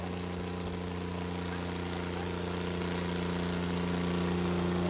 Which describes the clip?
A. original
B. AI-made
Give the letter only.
A